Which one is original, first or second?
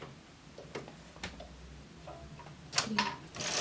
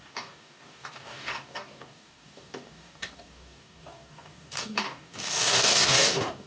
first